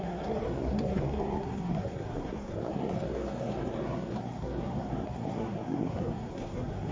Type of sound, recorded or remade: remade